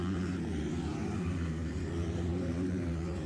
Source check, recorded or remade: remade